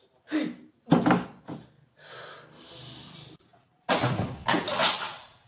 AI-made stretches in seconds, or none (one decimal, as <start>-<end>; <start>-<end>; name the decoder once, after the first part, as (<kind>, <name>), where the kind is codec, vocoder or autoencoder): none